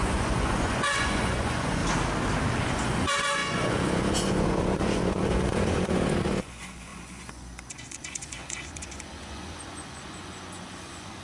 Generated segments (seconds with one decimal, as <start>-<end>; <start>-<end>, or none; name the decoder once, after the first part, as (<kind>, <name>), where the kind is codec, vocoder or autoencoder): 0.0-1.8 (vocoder, Vocos); 2.6-11.2